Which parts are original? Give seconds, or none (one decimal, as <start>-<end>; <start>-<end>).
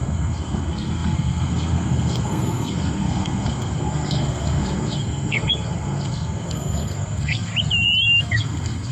7.5-8.2